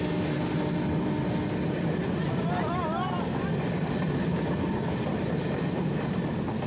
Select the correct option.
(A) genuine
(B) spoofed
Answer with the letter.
A